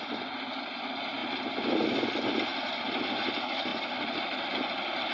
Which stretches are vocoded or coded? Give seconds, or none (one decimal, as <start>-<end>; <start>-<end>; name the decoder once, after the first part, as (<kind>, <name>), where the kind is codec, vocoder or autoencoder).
none